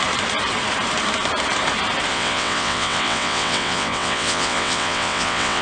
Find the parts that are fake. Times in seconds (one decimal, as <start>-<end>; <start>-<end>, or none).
2.1-5.6